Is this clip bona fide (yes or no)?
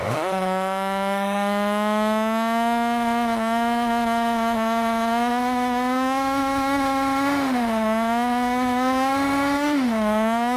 no